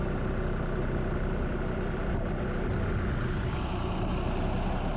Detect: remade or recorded recorded